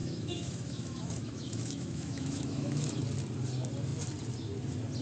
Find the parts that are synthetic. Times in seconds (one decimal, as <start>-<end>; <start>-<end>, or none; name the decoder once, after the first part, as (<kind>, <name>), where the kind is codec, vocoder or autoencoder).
0.0-3.0 (autoencoder, DAC-VAE)